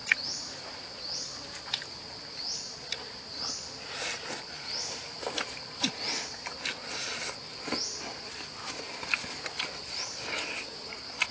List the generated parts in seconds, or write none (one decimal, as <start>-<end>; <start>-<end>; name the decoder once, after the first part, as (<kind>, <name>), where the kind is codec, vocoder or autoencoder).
none